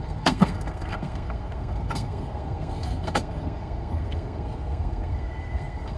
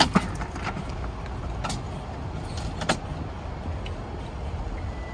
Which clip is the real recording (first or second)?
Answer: second